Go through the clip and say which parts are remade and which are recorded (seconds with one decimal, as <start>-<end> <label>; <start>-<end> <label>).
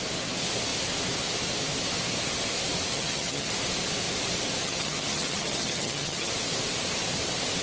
0.0-2.9 recorded; 2.9-3.5 remade; 3.5-4.6 recorded; 4.6-6.3 remade; 6.3-7.6 recorded